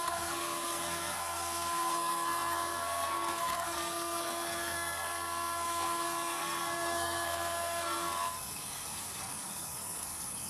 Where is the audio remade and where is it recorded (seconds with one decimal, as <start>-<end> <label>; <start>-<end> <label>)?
0.0-10.5 remade